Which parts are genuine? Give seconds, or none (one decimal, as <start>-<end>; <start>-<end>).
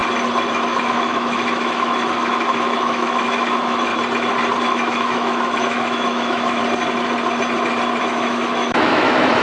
0.0-0.5; 3.9-4.6; 6.6-8.0